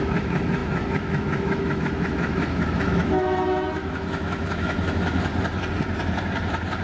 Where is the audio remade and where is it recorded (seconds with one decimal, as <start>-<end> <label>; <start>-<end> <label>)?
0.0-5.3 remade; 5.3-6.8 recorded